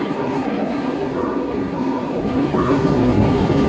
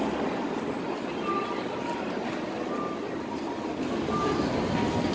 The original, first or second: second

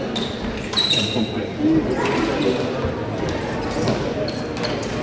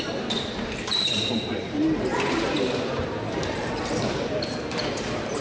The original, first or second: first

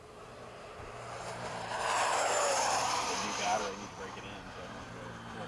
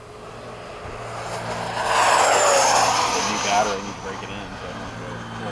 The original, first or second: second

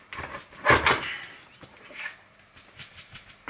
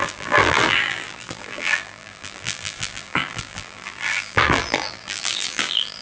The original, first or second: first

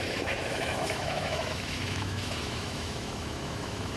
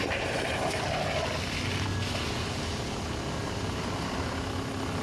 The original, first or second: second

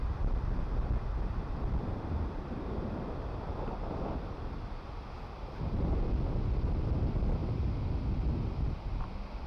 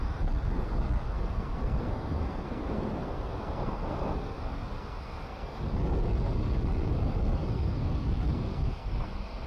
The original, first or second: first